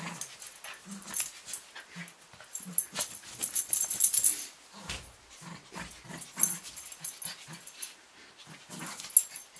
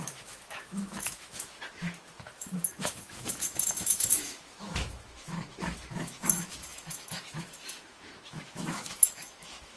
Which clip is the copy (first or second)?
second